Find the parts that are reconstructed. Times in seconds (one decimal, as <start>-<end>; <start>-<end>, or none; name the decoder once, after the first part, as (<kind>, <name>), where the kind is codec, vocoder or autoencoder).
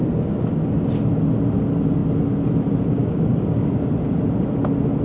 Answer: 3.0-3.9 (codec, DAC)